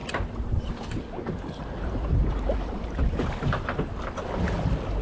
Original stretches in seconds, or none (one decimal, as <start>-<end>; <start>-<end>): 0.0-1.6; 3.9-5.0